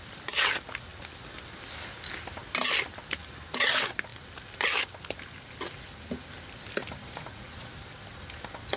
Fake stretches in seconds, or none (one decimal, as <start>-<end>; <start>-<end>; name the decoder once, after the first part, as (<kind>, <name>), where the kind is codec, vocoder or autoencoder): 7.0-7.7 (vocoder, Vocos)